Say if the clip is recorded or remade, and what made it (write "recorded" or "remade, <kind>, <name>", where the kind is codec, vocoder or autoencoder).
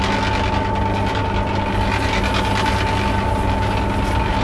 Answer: recorded